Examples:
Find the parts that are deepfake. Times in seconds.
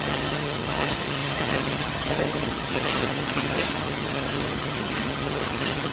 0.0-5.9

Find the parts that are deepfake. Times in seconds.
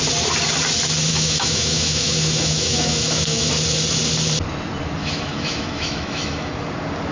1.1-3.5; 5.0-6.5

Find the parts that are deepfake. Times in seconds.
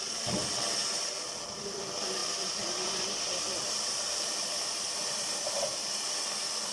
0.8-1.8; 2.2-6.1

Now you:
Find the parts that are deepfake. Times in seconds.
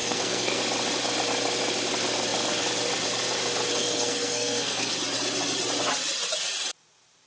0.0-0.6; 3.8-4.9